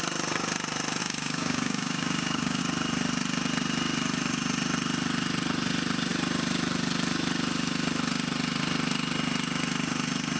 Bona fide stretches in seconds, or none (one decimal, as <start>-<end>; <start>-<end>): 0.0-1.0; 2.6-10.4